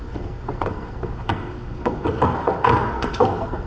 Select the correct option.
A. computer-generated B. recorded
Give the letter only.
A